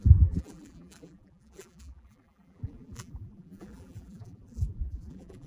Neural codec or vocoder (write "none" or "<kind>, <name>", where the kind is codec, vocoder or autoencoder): vocoder, BigVGAN v2